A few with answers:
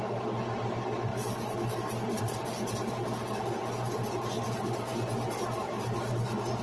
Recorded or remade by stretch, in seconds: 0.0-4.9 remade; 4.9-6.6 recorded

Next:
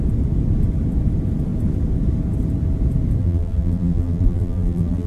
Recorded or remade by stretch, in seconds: 0.0-3.2 recorded; 3.2-5.1 remade

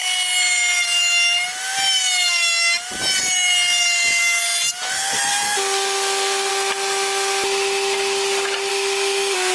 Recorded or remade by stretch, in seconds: 0.0-4.9 recorded; 4.9-6.5 remade; 6.5-8.7 recorded; 8.7-9.5 remade

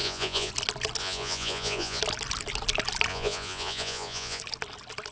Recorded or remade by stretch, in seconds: 0.0-0.5 remade; 0.5-1.0 recorded; 1.0-2.0 remade; 2.0-3.1 recorded; 3.1-4.4 remade; 4.4-5.1 recorded